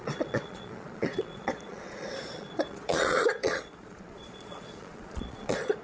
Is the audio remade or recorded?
remade